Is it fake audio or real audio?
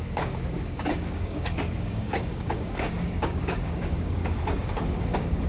fake